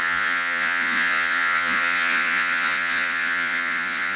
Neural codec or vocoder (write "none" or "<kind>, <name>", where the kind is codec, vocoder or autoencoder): vocoder, Vocos